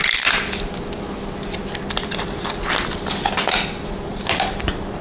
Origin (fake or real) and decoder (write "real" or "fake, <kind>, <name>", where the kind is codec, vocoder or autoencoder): real